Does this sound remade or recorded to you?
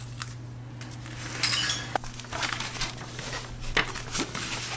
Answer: recorded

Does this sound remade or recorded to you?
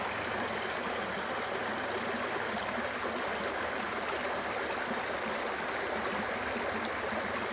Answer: recorded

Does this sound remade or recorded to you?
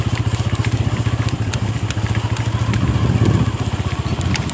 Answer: recorded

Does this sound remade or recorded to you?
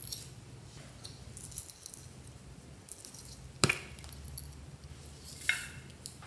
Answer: recorded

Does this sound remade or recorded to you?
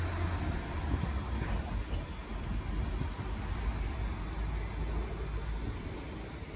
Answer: recorded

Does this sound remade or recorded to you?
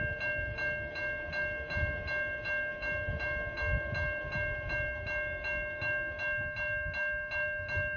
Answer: recorded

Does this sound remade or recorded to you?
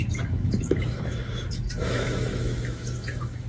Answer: remade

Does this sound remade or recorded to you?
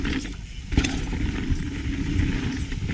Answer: recorded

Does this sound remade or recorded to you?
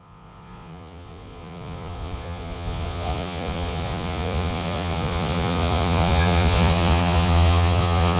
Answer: remade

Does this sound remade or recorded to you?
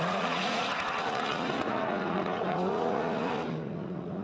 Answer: remade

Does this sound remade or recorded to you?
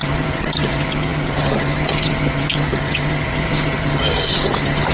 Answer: remade